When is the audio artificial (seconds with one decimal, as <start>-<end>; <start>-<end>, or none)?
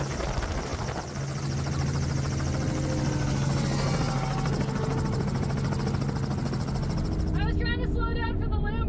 none